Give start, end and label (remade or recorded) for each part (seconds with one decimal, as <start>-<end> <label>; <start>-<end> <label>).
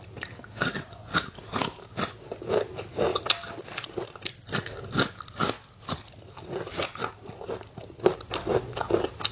0.0-9.3 recorded